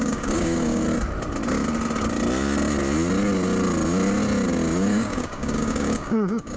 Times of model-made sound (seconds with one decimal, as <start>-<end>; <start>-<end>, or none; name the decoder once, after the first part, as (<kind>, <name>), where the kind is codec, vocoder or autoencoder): 0.0-0.8 (codec, DAC); 4.8-6.6